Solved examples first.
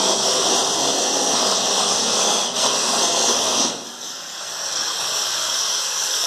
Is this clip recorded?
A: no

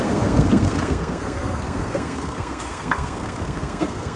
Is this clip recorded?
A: no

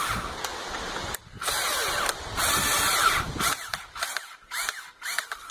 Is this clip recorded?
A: yes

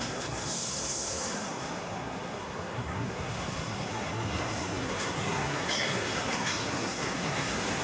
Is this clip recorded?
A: no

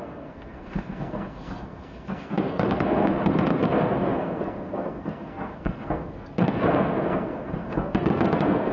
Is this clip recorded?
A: no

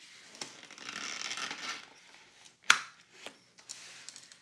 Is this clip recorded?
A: yes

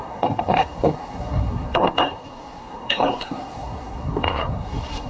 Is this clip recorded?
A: no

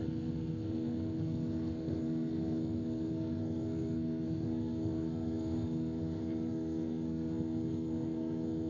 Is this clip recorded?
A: no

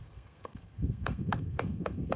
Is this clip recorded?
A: no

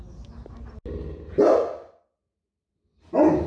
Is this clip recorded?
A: yes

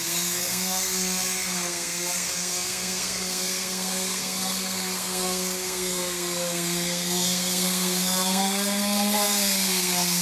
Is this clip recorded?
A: no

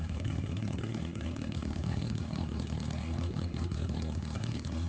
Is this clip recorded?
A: no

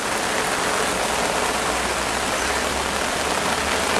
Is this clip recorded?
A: yes